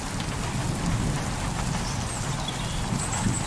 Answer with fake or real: real